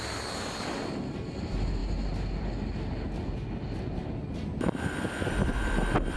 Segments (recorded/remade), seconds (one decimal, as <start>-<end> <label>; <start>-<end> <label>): 0.0-6.2 recorded